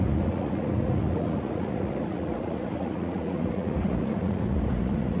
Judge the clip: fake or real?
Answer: fake